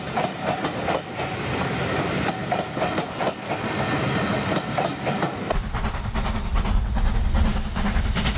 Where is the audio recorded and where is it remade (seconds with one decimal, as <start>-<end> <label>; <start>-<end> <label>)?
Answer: 0.0-8.4 recorded